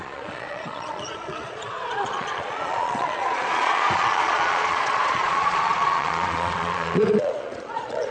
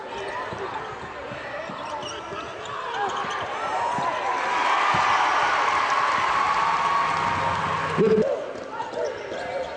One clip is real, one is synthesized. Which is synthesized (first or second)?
first